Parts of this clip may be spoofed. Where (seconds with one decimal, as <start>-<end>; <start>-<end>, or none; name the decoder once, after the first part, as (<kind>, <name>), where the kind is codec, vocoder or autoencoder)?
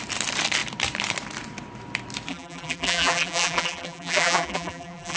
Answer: 2.3-5.2 (vocoder, BigVGAN v2)